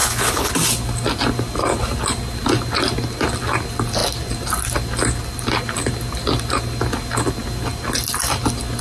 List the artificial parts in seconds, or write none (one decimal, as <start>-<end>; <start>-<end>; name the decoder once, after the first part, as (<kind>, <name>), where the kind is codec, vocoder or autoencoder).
0.0-0.5 (codec, HILCodec)